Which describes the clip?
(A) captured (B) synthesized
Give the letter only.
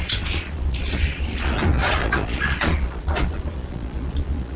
B